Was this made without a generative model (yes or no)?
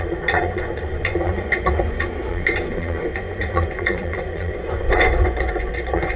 no